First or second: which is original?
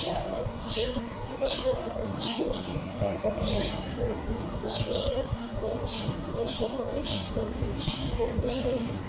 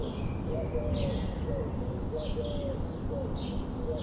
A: second